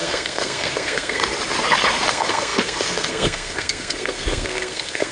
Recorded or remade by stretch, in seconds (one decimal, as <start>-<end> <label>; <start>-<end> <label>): 0.0-1.2 remade; 1.2-2.1 recorded; 2.1-5.1 remade